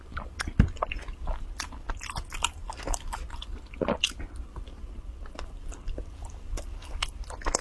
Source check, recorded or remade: recorded